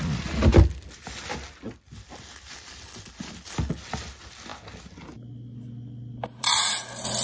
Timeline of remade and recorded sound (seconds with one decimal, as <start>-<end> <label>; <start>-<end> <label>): 0.0-7.2 recorded